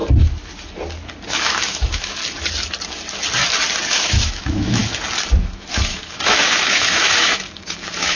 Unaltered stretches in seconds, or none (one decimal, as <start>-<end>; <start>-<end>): 0.0-1.3; 2.2-3.9; 4.8-5.4